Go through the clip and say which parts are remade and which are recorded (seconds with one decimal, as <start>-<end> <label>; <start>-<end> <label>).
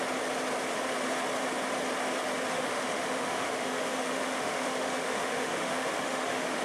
0.0-2.5 recorded; 2.5-6.6 remade